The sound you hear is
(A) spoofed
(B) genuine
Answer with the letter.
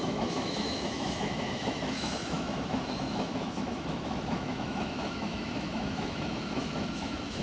A